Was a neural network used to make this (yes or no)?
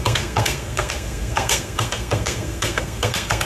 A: yes